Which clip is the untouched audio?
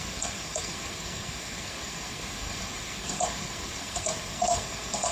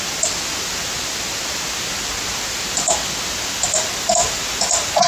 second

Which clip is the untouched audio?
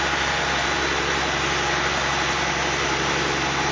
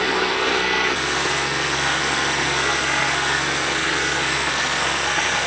first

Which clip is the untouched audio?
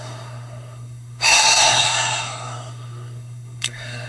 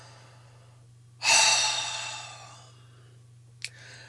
second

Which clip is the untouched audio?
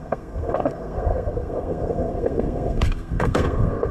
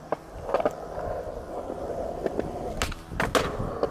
second